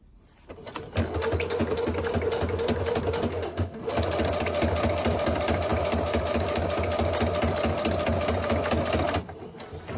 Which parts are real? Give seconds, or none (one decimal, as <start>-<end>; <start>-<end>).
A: 0.0-3.3; 3.8-10.0